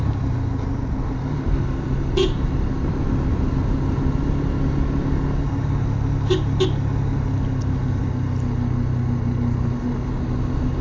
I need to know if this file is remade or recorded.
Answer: recorded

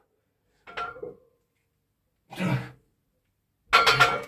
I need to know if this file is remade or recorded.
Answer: recorded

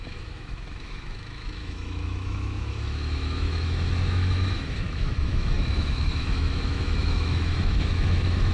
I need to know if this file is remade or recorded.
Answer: remade